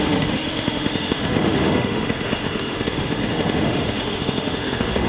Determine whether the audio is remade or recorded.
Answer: remade